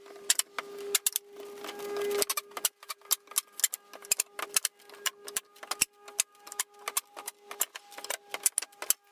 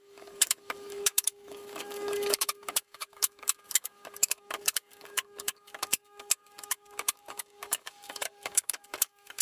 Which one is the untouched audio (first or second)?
first